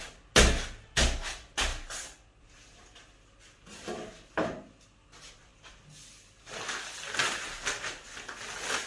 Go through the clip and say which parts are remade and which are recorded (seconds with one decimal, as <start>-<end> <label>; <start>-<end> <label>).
0.0-8.9 recorded

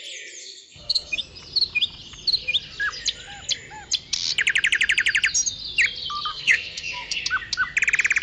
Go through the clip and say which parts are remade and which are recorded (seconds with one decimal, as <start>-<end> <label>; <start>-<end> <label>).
0.0-0.4 recorded; 0.4-1.2 remade; 1.2-6.3 recorded; 6.3-7.2 remade; 7.2-8.2 recorded

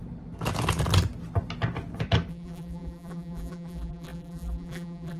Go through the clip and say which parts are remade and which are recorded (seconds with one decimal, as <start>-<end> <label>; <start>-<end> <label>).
0.0-2.3 recorded; 2.3-5.2 remade

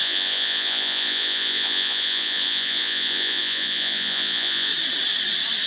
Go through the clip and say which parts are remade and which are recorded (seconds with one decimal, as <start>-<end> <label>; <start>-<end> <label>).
0.0-4.7 remade; 4.7-5.7 recorded

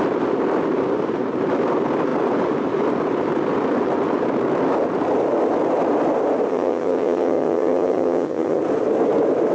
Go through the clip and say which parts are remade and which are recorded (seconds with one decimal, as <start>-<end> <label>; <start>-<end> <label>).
0.0-6.5 recorded; 6.5-8.6 remade; 8.6-9.5 recorded

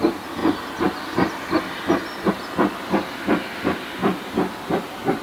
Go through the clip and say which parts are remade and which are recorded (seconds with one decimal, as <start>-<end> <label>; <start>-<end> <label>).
0.0-5.2 recorded

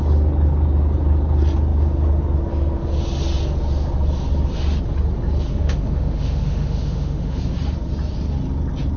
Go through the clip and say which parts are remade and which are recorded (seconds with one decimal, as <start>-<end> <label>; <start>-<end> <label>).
0.0-5.6 recorded; 5.6-7.4 remade; 7.4-9.0 recorded